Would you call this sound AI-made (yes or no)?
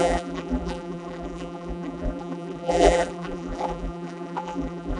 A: yes